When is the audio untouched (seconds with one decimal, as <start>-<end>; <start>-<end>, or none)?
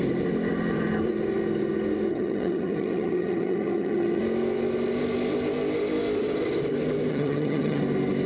0.0-2.1; 4.2-7.1; 7.8-8.3